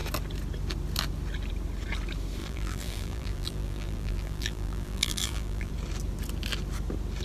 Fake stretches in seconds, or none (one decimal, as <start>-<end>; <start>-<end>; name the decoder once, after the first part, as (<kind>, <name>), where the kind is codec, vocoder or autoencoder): 2.4-5.7 (vocoder, BigVGAN v2)